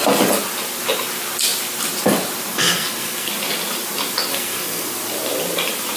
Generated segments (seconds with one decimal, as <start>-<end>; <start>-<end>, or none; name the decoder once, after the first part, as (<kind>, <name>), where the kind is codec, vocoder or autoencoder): 2.5-3.3 (codec, SNAC); 4.3-4.9

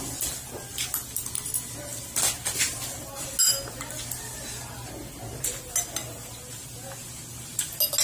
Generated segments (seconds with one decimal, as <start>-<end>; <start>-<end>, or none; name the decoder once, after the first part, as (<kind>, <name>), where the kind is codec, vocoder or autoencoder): none

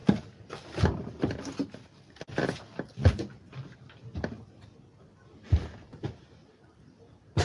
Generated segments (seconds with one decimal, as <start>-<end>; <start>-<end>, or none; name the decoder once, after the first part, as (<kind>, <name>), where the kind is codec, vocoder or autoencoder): none

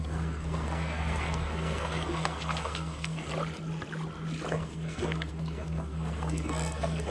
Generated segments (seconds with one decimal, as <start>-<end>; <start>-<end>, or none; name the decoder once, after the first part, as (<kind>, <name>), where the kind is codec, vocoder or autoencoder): 0.0-3.3 (codec, SNAC); 4.5-7.1

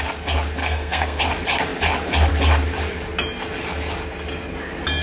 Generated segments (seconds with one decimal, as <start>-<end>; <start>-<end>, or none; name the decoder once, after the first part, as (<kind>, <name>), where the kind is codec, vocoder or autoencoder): 0.6-1.2 (codec, SNAC)

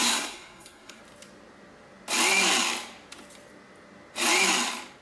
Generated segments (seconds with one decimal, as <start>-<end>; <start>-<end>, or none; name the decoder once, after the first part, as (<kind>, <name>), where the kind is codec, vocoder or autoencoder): 0.0-1.0 (codec, SNAC)